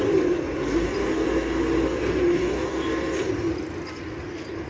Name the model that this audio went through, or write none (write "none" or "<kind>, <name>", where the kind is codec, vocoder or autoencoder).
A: none